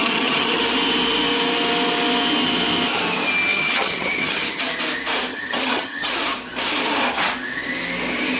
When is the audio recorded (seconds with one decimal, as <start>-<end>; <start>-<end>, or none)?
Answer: 0.6-3.5; 4.7-5.3; 6.1-8.4